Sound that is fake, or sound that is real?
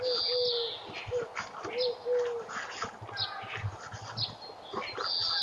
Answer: real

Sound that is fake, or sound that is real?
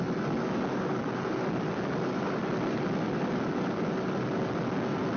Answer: real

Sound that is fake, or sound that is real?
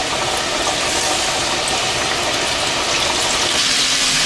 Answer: real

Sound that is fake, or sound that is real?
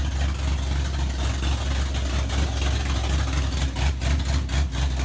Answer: real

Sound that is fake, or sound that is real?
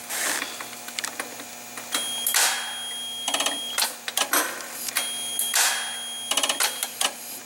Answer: real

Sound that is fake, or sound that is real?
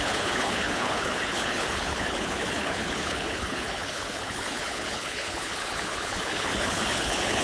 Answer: fake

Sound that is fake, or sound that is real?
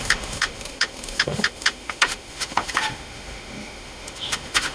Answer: fake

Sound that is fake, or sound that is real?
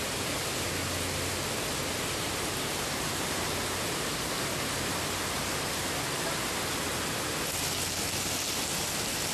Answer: real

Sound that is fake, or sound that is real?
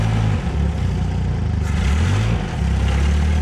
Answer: real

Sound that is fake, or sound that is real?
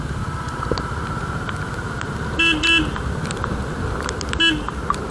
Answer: real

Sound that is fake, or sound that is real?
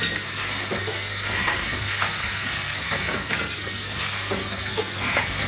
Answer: fake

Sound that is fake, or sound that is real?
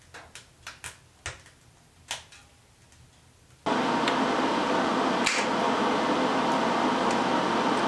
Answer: real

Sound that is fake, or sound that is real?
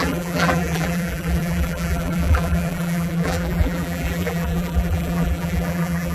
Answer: fake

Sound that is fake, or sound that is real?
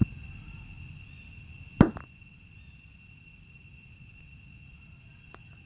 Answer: real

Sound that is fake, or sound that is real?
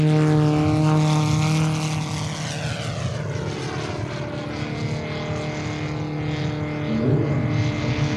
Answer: real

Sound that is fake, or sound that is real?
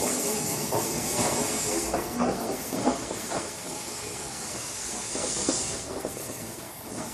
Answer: fake